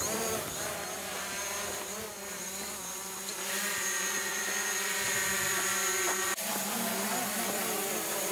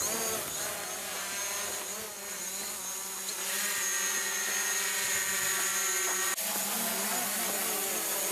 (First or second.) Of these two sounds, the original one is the second